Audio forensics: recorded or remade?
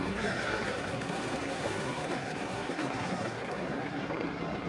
remade